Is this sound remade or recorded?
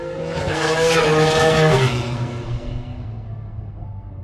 remade